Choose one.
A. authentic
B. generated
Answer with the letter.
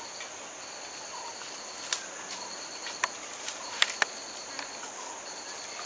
A